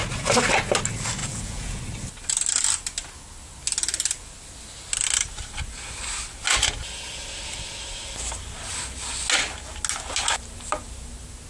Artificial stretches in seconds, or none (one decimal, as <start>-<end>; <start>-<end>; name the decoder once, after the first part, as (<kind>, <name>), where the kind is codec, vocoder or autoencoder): 1.2-1.8 (vocoder, Vocos)